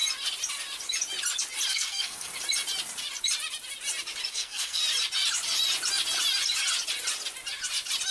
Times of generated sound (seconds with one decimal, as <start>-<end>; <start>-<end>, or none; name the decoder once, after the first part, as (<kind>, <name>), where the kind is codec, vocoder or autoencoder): 1.7-2.3 (codec, SNAC); 4.3-4.8